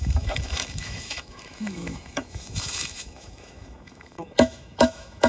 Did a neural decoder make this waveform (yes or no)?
yes